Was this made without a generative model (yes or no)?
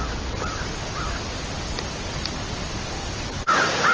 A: yes